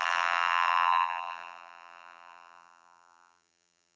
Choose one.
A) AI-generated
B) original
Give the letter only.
A